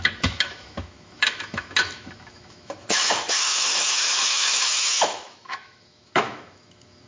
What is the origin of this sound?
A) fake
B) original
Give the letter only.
A